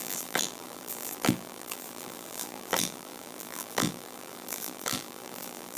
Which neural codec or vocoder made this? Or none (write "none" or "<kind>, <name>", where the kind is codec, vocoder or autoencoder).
vocoder, BigVGAN v2